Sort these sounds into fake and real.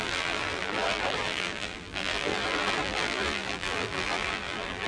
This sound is fake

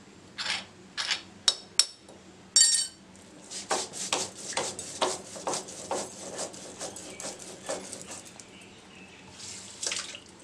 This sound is real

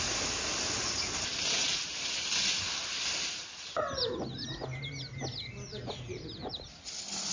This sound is real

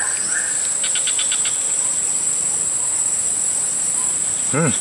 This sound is real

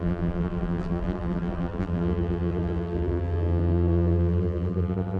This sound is fake